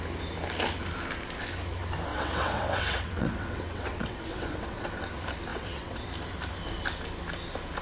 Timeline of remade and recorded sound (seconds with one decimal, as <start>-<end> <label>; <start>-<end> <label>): 0.0-2.1 recorded; 2.1-4.9 remade; 4.9-5.5 recorded; 5.5-6.1 remade; 6.1-7.8 recorded